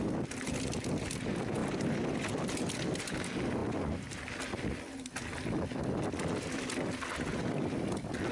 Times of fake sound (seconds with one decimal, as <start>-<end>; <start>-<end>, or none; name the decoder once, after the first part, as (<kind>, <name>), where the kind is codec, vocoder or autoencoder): none